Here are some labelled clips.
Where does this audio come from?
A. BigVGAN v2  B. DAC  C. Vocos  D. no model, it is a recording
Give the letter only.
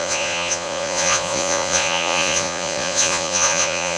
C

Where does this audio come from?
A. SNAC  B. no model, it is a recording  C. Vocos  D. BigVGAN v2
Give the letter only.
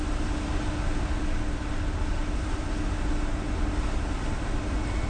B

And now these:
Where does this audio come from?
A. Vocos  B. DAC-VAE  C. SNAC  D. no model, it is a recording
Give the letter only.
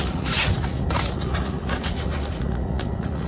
A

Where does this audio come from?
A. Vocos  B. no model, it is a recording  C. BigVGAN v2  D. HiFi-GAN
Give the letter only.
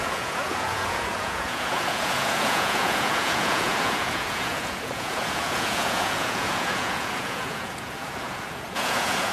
A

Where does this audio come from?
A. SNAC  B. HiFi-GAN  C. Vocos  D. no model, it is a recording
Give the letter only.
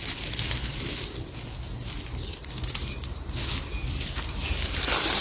D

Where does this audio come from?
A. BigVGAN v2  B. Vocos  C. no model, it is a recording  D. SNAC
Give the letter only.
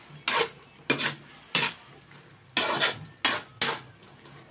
C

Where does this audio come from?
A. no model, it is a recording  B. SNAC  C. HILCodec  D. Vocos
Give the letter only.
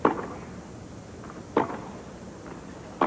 A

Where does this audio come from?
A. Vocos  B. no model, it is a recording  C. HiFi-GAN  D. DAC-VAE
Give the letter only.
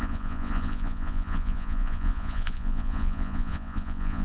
A